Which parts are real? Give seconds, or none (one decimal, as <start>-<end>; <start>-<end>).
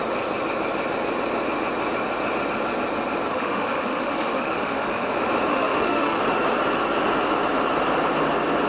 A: 0.0-3.3; 5.1-5.5; 6.2-8.7